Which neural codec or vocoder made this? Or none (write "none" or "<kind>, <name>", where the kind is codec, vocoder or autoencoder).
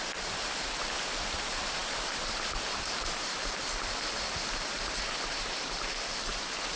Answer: none